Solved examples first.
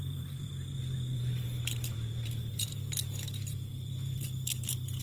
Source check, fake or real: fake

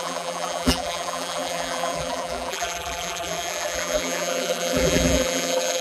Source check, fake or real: fake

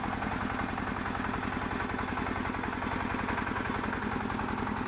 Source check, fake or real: real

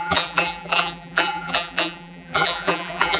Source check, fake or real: fake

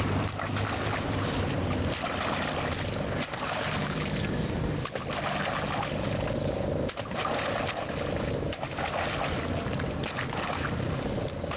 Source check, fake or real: real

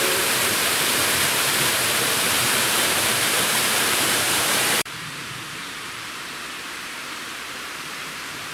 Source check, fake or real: fake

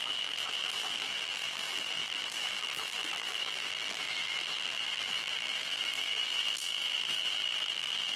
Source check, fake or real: fake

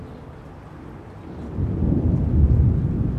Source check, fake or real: real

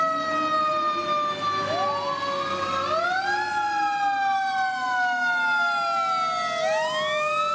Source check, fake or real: real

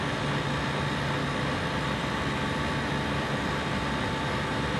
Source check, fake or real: real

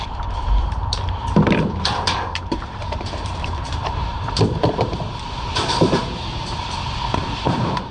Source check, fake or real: fake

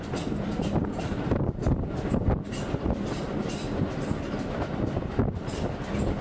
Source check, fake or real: fake